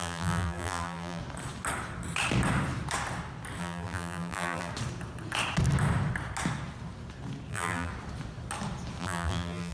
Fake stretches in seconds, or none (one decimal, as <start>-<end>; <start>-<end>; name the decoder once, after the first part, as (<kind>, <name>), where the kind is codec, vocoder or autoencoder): 0.0-1.2 (vocoder, BigVGAN v2); 3.6-4.7; 7.5-7.9; 9.0-9.7